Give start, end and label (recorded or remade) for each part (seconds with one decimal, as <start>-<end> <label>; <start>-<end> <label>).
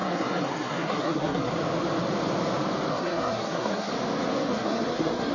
0.0-1.5 remade; 1.5-2.9 recorded; 2.9-3.9 remade; 3.9-4.5 recorded; 4.5-5.3 remade